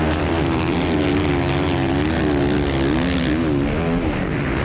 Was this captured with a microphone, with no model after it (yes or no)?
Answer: yes